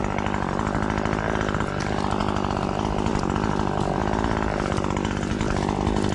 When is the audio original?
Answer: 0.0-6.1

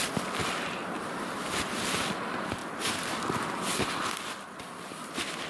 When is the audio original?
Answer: 0.0-5.5

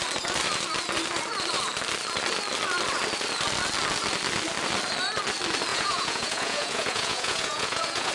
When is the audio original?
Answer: 0.0-5.7

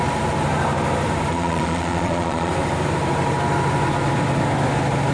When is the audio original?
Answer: 0.0-1.3; 2.5-5.1

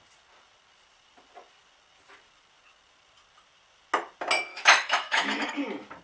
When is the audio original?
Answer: 0.0-4.5; 5.5-6.0